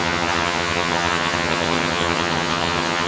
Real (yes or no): no